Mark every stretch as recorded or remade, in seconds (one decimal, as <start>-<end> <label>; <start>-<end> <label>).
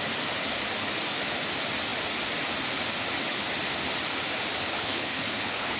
0.0-4.7 recorded; 4.7-5.8 remade